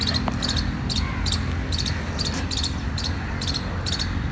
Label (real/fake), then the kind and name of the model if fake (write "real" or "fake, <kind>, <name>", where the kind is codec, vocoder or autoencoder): real